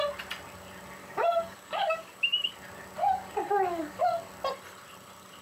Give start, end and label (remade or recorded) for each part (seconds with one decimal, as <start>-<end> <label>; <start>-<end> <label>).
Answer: 0.0-1.0 recorded; 1.0-2.5 remade; 2.5-3.0 recorded; 3.0-4.3 remade; 4.3-5.4 recorded